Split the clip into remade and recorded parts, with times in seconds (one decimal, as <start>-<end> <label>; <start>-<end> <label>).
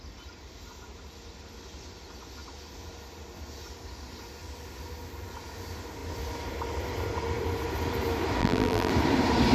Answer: 0.0-8.4 recorded; 8.4-8.9 remade; 8.9-9.5 recorded